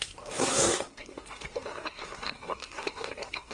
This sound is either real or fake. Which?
fake